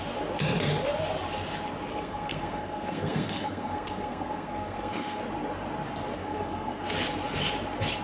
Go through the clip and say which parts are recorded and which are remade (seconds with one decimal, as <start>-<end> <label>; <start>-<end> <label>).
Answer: 0.0-1.9 recorded; 1.9-5.2 remade; 5.2-6.2 recorded; 6.2-6.8 remade; 6.8-8.0 recorded

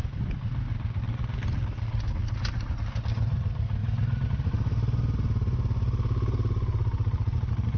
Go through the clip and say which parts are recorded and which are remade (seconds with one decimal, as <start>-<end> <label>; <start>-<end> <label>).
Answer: 0.0-7.8 recorded

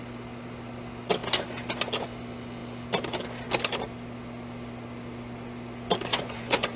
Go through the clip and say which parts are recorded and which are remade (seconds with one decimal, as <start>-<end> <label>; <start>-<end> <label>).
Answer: 0.0-6.1 recorded; 6.1-6.8 remade

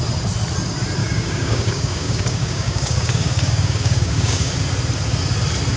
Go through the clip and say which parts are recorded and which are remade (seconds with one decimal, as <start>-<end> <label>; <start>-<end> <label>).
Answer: 0.0-1.0 recorded; 1.0-4.5 remade; 4.5-5.8 recorded

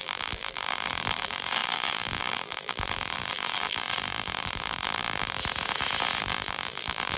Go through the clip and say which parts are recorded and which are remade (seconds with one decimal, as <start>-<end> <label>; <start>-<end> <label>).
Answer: 0.0-5.4 remade; 5.4-6.2 recorded; 6.2-7.2 remade

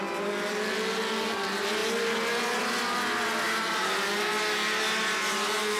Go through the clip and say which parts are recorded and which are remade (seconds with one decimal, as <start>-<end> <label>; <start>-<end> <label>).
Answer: 0.0-5.8 recorded

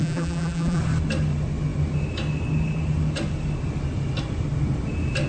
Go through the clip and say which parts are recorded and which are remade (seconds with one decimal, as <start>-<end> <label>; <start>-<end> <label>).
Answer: 0.0-0.8 remade; 0.8-5.3 recorded